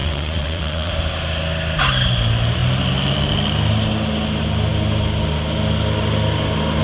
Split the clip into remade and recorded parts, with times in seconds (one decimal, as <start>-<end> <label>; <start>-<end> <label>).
0.0-0.9 remade; 0.9-6.8 recorded